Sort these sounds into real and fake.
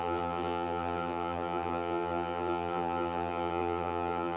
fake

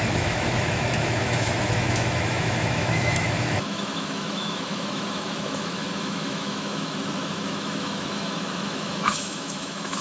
fake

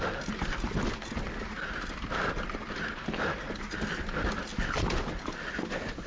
real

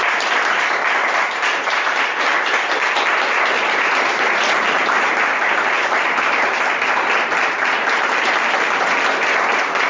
real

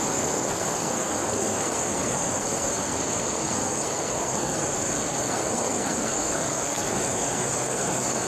fake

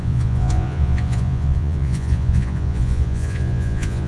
fake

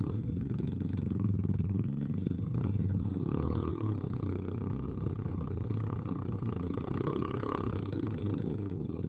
fake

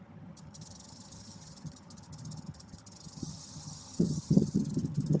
fake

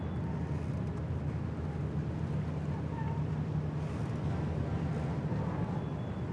real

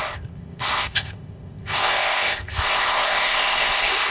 fake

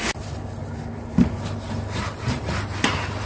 real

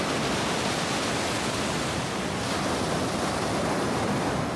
real